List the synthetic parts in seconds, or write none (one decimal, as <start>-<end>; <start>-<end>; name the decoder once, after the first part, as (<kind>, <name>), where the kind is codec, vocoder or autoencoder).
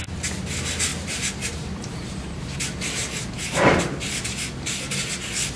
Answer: 0.9-4.3 (vocoder, BigVGAN v2)